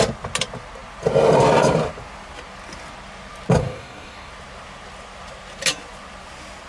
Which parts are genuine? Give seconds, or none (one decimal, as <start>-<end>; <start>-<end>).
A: 0.0-3.6; 4.3-6.7